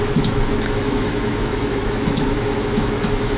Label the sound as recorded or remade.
remade